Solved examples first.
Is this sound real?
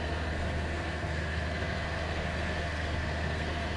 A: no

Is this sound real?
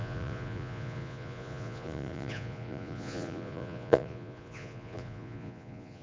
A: no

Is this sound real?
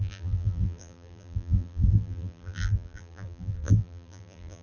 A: no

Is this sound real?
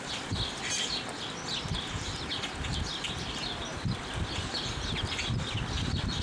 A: yes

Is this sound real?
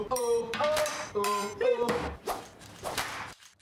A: no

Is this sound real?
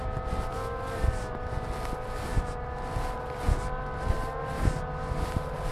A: yes